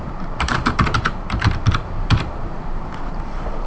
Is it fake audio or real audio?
fake